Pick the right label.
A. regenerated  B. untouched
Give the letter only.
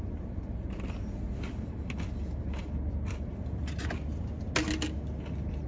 B